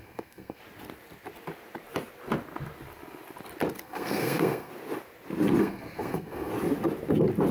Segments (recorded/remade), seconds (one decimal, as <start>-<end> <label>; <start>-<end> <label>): 0.0-0.6 remade; 0.6-3.8 recorded; 3.8-4.7 remade; 4.7-5.6 recorded; 5.6-6.5 remade; 6.5-7.5 recorded

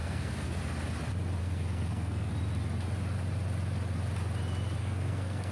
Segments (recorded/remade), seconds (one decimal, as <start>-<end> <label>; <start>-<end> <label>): 0.0-0.6 remade; 0.6-1.4 recorded; 1.4-2.3 remade; 2.3-4.8 recorded; 4.8-5.5 remade